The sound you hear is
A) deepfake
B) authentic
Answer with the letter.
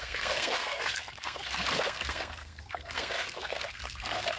A